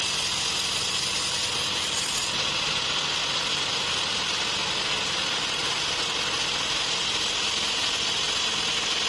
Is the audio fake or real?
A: real